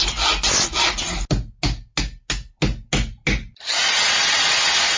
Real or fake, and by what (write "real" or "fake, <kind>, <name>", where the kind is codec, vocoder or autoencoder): real